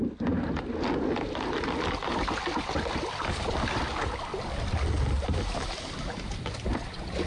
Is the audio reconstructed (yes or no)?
no